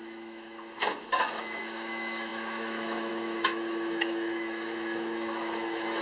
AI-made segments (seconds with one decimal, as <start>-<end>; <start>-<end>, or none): 0.0-6.0

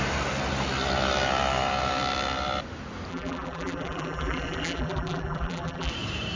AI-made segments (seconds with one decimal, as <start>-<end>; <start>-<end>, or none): 3.1-5.9

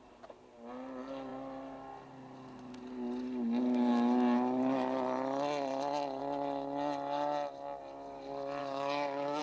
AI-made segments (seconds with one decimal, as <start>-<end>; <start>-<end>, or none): 8.6-9.4

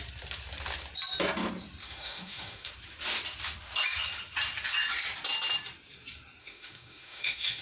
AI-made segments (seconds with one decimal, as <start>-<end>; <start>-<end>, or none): 1.8-2.7; 6.4-7.6

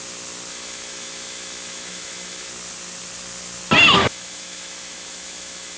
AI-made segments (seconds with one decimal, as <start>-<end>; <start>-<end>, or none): 0.5-2.5; 4.0-5.8

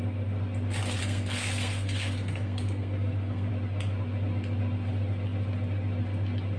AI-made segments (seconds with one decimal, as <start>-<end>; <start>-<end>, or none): 1.0-3.5

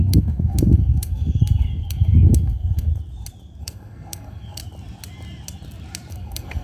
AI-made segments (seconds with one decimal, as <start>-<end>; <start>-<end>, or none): 0.0-2.9; 3.6-4.6; 6.1-6.6

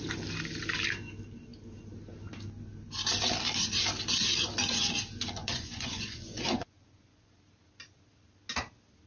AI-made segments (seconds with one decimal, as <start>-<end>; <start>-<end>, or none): 5.4-7.3